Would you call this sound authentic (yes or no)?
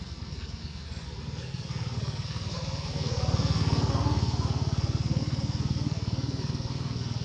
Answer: no